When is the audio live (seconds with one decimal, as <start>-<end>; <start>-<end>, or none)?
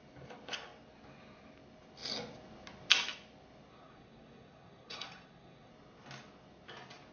0.0-3.7; 5.7-7.1